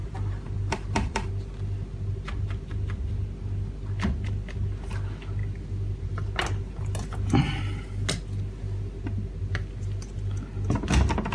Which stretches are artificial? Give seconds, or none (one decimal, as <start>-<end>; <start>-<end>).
0.0-1.3